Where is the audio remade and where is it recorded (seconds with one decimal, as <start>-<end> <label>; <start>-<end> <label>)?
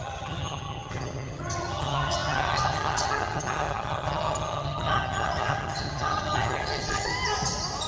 0.0-7.1 remade; 7.1-7.9 recorded